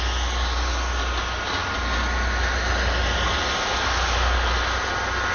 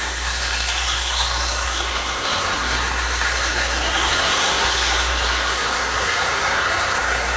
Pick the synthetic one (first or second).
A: second